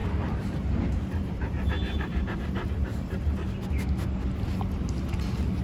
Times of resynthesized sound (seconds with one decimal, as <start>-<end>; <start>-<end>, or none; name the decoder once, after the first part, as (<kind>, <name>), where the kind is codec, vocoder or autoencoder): 0.0-3.4 (vocoder, BigVGAN v2)